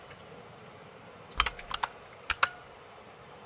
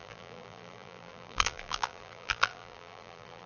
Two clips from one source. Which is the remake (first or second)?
second